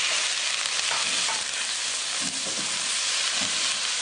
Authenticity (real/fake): real